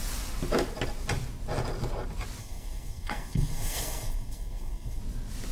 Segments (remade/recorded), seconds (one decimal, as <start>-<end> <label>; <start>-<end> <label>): 0.0-2.4 recorded; 2.4-5.0 remade; 5.0-5.5 recorded